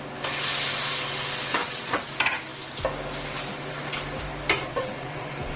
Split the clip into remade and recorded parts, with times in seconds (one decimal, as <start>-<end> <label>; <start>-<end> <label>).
0.0-1.6 recorded; 1.6-2.1 remade; 2.1-4.7 recorded; 4.7-5.6 remade